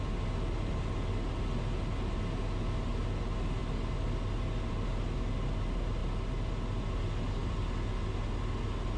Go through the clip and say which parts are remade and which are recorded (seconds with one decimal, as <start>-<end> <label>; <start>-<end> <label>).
0.0-9.0 recorded